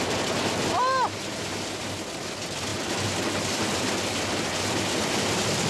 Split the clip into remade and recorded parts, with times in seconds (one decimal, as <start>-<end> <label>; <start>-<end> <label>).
0.0-5.7 recorded